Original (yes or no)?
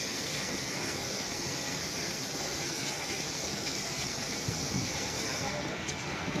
no